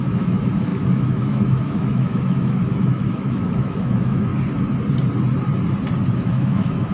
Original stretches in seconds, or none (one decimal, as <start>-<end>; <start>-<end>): 4.3-6.1